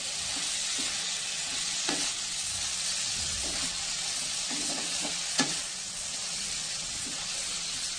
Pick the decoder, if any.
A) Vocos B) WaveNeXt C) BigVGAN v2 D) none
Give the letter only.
B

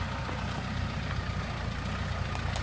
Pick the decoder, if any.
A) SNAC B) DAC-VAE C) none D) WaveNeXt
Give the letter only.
C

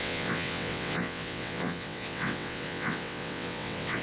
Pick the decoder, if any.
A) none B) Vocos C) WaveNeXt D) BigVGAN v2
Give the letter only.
C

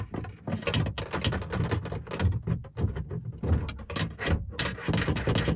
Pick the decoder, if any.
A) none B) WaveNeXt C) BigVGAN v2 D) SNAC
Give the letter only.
A